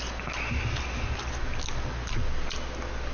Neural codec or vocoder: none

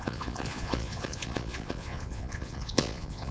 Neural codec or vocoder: vocoder, Vocos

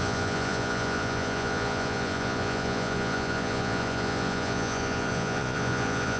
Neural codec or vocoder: vocoder, Vocos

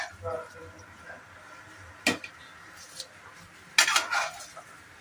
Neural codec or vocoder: none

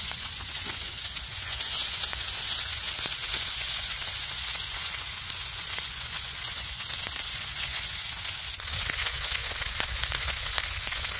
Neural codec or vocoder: vocoder, Vocos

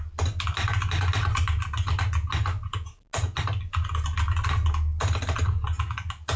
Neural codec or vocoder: none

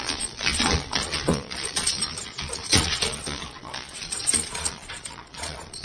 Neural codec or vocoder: vocoder, Vocos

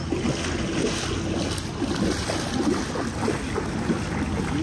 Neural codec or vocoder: none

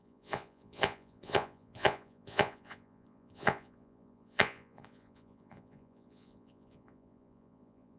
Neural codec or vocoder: vocoder, Vocos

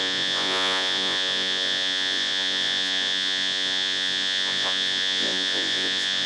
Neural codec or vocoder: vocoder, Vocos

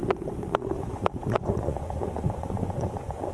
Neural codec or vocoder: vocoder, Vocos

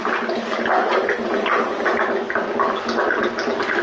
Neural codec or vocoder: none